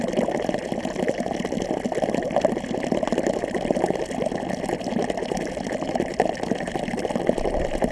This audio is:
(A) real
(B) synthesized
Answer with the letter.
A